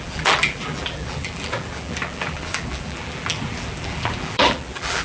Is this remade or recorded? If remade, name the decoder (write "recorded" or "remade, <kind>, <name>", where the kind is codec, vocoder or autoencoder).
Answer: remade, vocoder, BigVGAN v2